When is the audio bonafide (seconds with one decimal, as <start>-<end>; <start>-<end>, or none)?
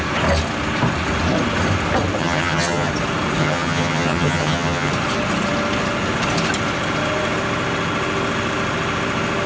0.0-2.2; 2.9-3.4; 4.9-9.5